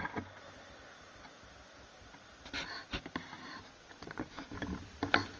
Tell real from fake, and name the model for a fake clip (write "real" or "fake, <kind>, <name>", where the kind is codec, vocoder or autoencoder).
real